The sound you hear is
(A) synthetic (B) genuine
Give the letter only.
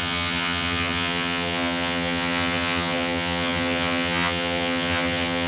A